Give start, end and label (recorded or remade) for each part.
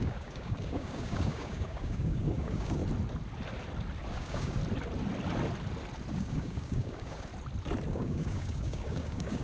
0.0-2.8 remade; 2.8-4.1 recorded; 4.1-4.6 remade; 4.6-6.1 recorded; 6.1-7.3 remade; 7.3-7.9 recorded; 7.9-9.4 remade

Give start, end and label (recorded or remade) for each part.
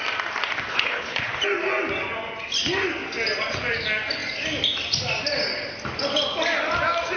0.0-0.7 recorded; 0.7-1.3 remade; 1.3-7.2 recorded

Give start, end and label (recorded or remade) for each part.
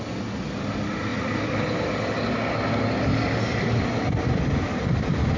0.0-5.4 recorded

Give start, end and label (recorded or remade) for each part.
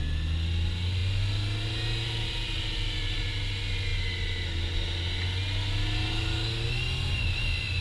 0.0-7.8 recorded